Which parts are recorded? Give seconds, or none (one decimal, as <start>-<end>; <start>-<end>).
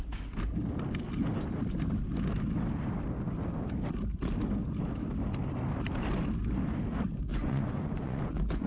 0.0-7.3